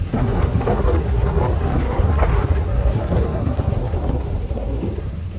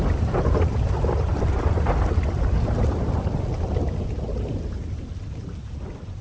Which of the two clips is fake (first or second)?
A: first